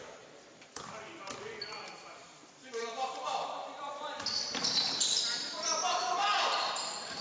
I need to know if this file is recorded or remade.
remade